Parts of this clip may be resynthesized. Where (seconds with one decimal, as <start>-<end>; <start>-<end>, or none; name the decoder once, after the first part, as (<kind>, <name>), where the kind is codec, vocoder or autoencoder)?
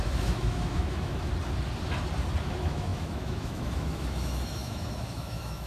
0.0-1.3 (autoencoder, DAC-VAE); 2.4-5.7